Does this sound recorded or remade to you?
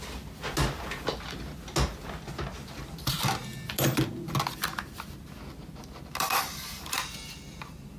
recorded